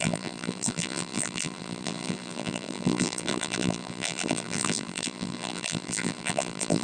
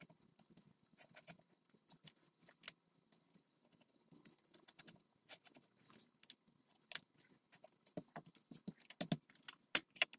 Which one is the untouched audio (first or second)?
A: second